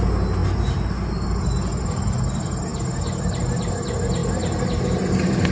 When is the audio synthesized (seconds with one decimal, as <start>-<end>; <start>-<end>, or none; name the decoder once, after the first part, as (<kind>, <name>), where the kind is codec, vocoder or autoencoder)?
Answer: none